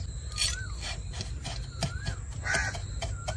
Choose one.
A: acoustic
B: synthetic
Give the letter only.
A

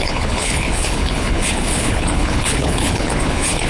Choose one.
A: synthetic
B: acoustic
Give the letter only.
A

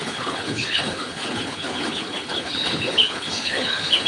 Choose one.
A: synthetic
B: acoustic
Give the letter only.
A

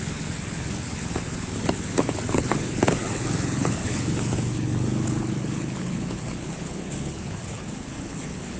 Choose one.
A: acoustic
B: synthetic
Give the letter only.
B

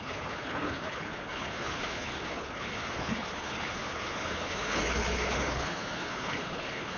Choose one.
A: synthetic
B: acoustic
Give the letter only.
A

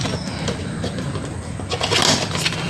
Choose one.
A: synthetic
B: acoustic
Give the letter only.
B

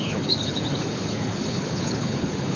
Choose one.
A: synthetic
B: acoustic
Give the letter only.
A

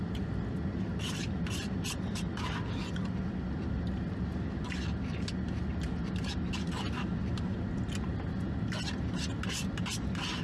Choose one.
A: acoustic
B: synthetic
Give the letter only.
A